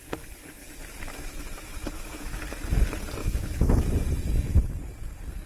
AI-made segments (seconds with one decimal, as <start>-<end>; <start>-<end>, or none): 1.8-2.4; 3.2-3.9

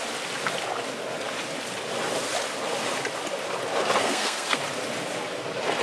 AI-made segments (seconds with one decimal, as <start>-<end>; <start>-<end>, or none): 4.0-4.6